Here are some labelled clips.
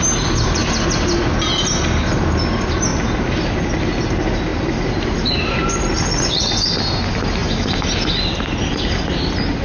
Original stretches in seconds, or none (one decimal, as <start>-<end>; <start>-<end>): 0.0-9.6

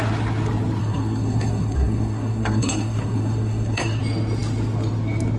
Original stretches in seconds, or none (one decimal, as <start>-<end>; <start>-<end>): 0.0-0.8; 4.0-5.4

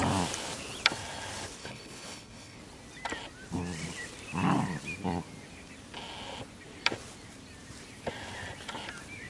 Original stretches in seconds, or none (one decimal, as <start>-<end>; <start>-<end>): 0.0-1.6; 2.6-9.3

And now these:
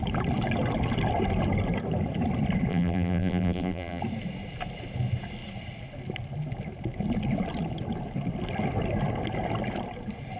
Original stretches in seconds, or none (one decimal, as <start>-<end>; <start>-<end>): 0.0-2.7; 4.0-10.4

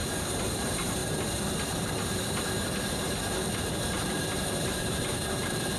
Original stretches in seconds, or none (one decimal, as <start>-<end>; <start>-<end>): 0.0-0.5; 1.0-4.5